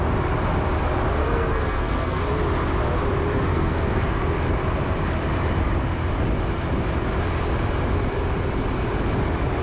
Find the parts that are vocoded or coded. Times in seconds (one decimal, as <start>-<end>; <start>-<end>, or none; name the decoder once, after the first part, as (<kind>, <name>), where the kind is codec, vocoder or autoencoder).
1.2-2.2 (codec, SNAC); 3.5-4.2